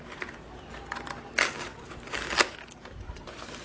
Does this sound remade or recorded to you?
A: recorded